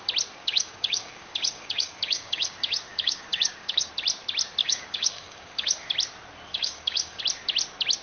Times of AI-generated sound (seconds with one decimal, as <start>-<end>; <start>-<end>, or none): 0.4-3.9; 4.6-5.9; 6.5-7.2